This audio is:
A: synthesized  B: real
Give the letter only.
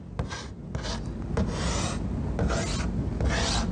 B